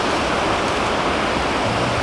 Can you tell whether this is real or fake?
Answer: real